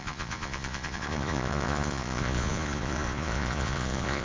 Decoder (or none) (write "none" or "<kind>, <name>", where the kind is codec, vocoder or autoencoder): vocoder, Vocos